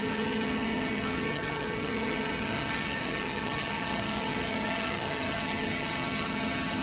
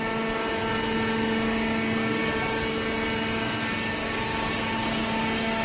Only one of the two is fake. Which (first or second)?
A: first